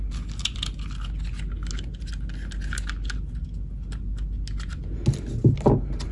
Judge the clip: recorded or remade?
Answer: recorded